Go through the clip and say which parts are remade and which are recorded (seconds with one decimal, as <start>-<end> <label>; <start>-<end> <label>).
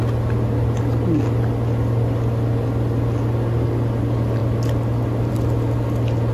0.0-6.3 recorded